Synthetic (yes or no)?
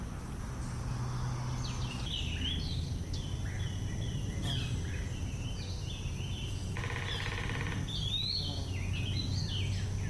no